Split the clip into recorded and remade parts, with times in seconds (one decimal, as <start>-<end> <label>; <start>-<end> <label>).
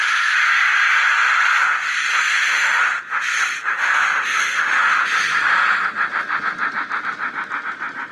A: 0.0-2.1 recorded; 2.1-2.8 remade; 2.8-3.7 recorded; 3.7-5.0 remade; 5.0-8.1 recorded